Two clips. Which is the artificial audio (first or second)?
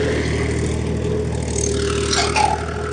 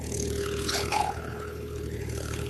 second